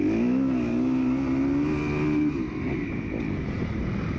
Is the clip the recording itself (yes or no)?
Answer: yes